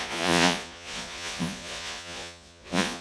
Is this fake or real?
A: fake